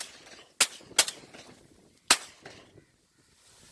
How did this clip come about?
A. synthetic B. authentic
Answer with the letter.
B